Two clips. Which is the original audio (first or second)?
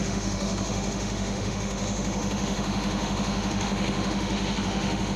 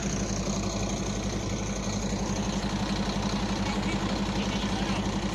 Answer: second